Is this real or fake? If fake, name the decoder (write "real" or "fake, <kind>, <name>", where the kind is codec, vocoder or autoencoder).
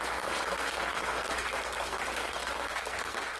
fake, codec, SNAC